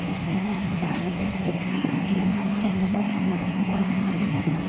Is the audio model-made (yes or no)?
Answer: yes